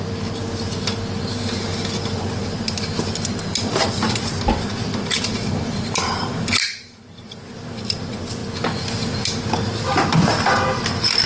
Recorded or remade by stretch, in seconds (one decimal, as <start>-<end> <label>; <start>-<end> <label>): 0.0-4.9 recorded; 4.9-7.4 remade; 7.4-11.3 recorded